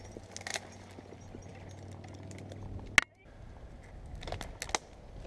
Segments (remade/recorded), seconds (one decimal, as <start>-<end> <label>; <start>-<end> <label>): 0.0-5.3 recorded